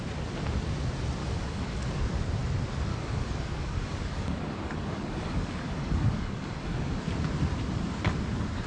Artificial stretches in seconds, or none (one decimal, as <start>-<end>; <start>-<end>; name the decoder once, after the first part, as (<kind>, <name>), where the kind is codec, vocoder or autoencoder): 1.2-2.0 (codec, DAC); 2.9-7.0